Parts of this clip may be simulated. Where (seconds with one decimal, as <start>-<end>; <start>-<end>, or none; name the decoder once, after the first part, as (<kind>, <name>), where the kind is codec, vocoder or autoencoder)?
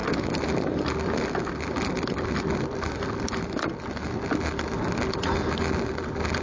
none